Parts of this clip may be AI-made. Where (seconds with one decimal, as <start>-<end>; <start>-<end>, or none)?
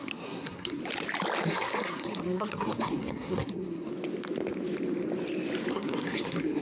0.0-0.8; 1.4-3.9; 5.7-6.6